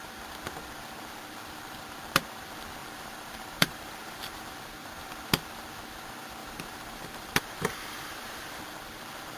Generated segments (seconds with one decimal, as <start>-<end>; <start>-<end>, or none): 2.8-4.5; 6.4-8.6

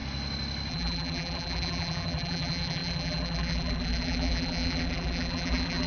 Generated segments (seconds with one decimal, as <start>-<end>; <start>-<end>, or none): 0.7-5.9

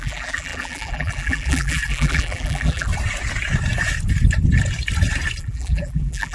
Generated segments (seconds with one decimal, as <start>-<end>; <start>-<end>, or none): 0.0-2.9; 5.4-6.3

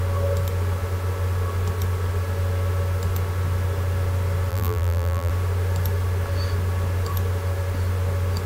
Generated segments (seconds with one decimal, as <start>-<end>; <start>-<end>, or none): 4.5-5.3

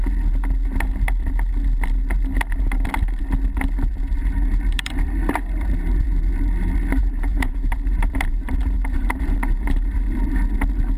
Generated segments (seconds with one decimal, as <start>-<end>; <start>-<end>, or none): 3.9-6.3; 7.0-10.4

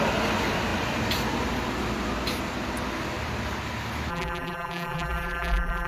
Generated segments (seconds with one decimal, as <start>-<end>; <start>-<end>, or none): 4.1-5.9

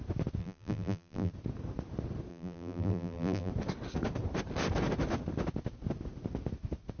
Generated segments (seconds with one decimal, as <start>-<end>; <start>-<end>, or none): 0.4-1.3; 2.3-3.5

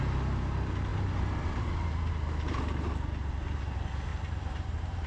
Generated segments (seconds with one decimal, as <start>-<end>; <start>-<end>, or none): 0.9-2.1; 4.1-5.1